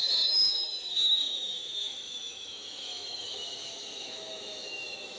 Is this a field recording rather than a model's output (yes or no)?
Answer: no